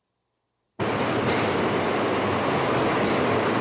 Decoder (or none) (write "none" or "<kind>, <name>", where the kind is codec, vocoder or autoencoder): none